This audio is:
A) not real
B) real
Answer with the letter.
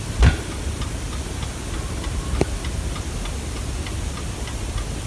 B